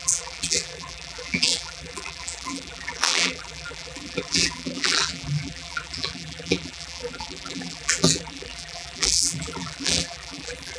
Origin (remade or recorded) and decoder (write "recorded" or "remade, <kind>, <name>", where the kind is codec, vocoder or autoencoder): remade, vocoder, BigVGAN v2